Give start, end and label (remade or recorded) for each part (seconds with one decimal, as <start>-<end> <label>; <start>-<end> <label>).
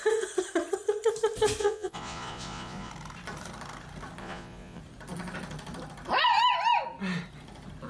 0.0-1.6 recorded; 1.6-2.9 remade; 2.9-4.2 recorded; 4.2-4.8 remade; 4.8-7.9 recorded